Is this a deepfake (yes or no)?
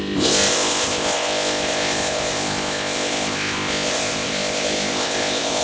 yes